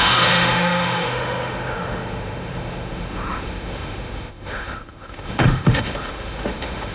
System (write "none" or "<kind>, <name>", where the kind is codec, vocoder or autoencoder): autoencoder, DAC-VAE